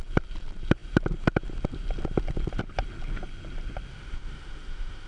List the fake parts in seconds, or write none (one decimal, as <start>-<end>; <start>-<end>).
3.9-5.1